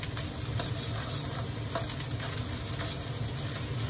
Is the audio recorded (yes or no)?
yes